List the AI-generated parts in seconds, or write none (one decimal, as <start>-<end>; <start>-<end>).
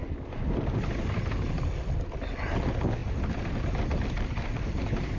none